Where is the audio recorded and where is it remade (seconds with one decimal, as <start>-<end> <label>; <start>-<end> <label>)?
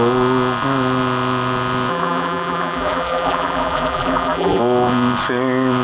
0.0-1.9 recorded; 1.9-4.6 remade; 4.6-5.8 recorded